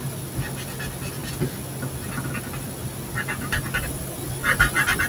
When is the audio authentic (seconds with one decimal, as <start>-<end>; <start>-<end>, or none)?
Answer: 0.0-5.1